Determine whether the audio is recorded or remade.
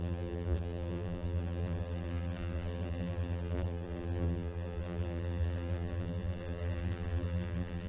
remade